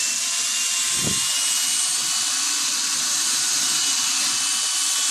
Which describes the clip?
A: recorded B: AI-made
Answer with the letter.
A